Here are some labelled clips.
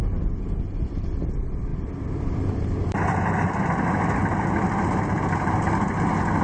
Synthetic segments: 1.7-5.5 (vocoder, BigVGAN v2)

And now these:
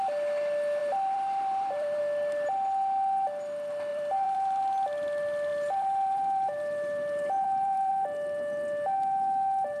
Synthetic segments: 0.8-2.0 (vocoder, BigVGAN v2); 3.9-4.6; 5.5-7.9

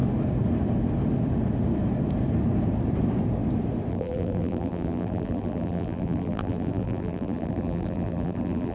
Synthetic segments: 3.9-8.7 (vocoder, BigVGAN v2)

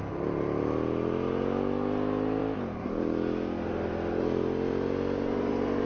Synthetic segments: none

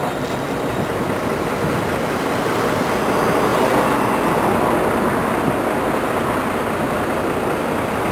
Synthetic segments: 0.0-3.5 (vocoder, BigVGAN v2); 7.6-8.1